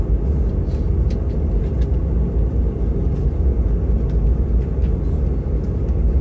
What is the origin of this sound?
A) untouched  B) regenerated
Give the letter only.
A